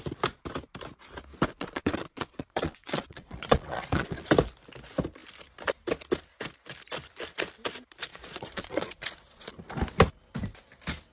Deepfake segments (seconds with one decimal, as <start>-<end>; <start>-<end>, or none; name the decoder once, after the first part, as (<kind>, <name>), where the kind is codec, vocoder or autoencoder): 1.5-4.3 (vocoder, Vocos); 8.1-9.5